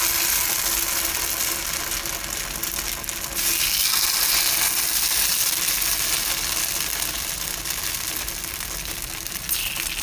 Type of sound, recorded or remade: recorded